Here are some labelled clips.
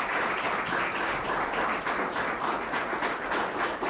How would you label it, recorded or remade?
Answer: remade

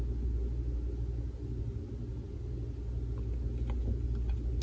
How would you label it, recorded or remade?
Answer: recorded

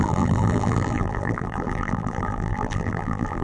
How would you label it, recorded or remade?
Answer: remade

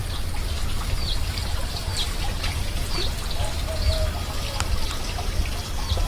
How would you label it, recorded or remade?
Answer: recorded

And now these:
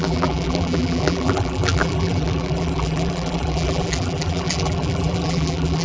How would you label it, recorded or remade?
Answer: remade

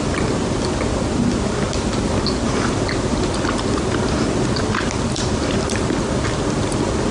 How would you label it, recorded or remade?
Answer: recorded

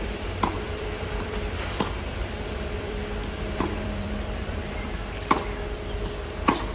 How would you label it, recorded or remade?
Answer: remade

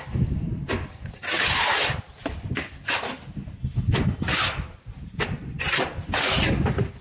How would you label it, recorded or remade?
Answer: recorded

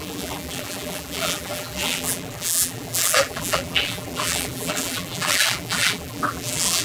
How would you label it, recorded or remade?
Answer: remade